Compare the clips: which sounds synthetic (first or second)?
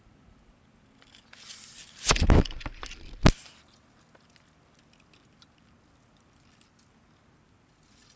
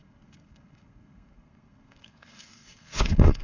second